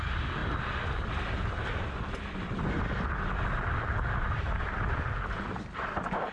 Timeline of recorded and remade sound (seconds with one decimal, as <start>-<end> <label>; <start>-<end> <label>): 0.0-6.3 recorded